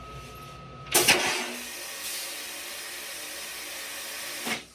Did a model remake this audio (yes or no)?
no